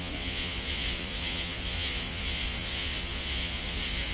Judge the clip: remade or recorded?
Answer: remade